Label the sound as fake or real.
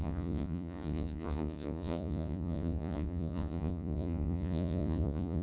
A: fake